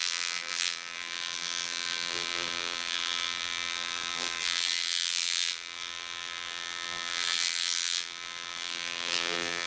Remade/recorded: remade